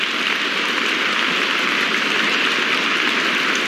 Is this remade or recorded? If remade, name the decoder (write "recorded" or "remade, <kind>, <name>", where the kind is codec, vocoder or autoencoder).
recorded